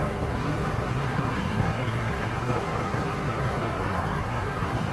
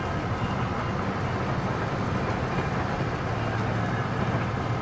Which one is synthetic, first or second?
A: first